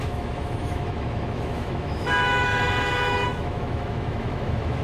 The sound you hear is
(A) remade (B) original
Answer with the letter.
A